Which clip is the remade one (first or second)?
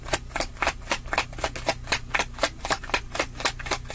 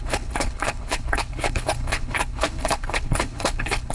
second